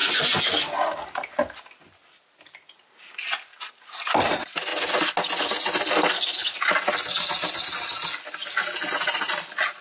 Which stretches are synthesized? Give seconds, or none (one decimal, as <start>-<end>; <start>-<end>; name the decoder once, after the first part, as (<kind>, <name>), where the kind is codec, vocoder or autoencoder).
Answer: none